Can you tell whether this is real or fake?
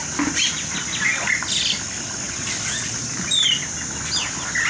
real